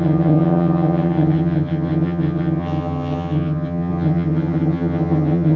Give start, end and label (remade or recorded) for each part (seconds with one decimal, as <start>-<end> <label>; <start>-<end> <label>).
0.0-5.6 remade